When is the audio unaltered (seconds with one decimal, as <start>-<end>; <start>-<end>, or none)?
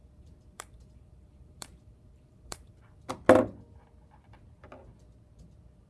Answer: 3.1-5.9